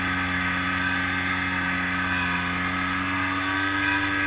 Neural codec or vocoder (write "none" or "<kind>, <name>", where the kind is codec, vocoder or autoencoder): none